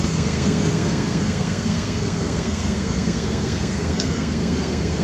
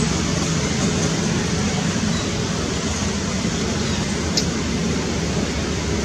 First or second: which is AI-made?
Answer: first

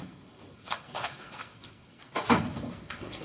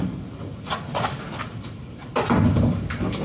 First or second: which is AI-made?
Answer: first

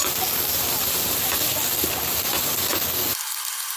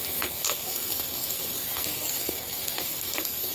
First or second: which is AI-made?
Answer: second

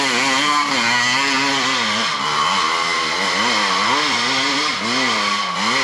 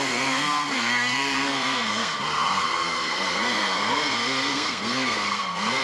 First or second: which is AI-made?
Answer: second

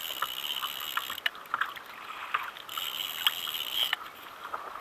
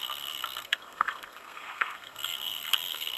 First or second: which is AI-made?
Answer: second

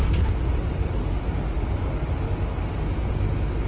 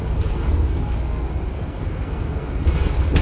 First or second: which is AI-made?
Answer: second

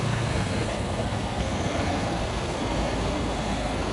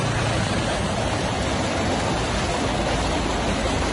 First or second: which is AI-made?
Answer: first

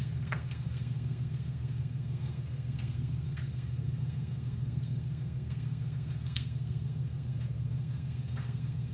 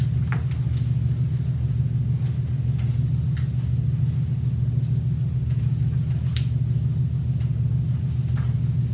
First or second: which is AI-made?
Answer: first